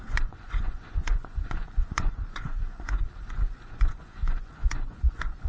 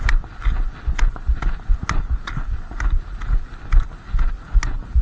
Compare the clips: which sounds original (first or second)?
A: second